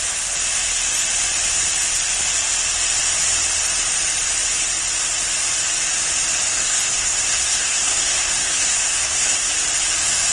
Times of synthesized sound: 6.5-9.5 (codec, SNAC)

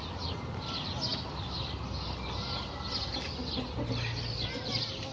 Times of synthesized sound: none

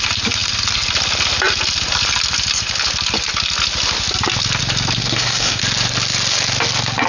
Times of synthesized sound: 5.0-5.6 (codec, DAC)

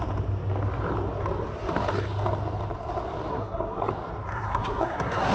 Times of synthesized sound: 3.3-3.9 (codec, SNAC); 4.3-5.3

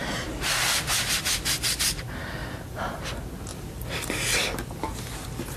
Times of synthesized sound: 2.4-3.0 (vocoder, BigVGAN v2); 3.5-4.1

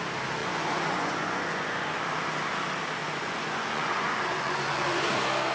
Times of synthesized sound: 0.4-2.0 (vocoder, Vocos); 3.0-5.1

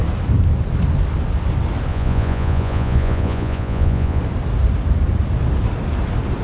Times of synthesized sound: 1.9-4.2 (vocoder, Vocos)